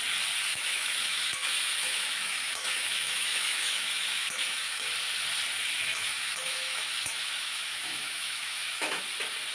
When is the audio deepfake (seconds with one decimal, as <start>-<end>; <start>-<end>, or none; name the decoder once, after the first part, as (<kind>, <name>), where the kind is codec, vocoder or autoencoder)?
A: 0.5-4.8 (autoencoder, DAC-VAE); 5.9-9.0